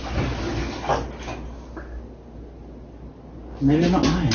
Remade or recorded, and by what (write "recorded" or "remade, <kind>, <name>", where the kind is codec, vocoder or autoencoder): recorded